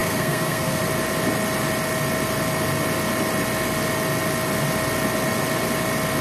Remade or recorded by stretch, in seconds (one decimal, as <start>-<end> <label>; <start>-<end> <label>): 0.0-0.8 remade; 0.8-6.2 recorded